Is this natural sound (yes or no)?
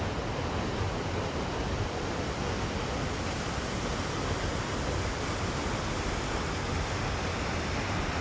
yes